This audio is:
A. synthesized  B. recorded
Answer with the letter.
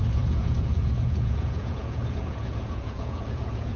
A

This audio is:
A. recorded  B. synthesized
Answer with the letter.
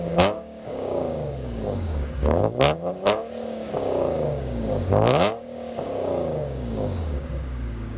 B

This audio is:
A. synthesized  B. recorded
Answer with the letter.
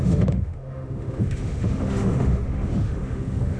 A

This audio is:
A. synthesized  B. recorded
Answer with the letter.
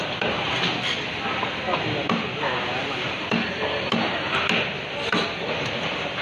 B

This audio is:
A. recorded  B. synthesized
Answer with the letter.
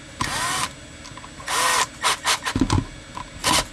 A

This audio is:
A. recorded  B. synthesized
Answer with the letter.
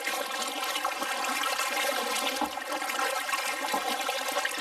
A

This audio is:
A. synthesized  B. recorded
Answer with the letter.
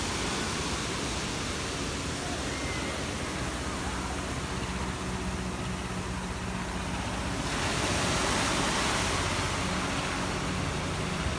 B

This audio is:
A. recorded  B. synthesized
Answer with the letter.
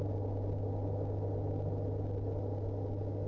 A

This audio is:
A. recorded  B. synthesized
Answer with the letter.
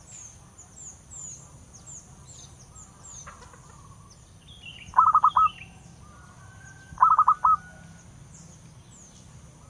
A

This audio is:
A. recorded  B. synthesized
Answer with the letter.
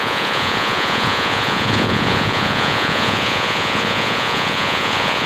B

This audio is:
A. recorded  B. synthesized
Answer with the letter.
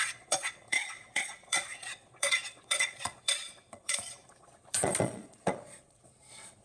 B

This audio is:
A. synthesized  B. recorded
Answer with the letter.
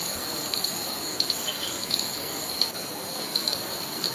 A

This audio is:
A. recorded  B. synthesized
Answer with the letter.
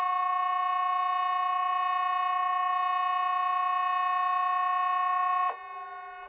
A